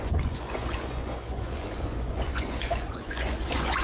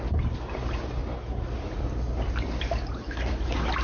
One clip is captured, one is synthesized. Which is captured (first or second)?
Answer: second